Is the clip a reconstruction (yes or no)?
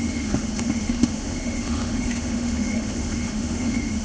yes